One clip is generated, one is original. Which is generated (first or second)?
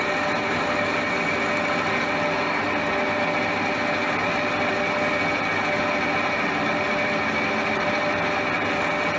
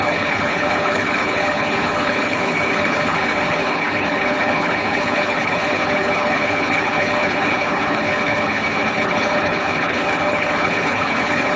second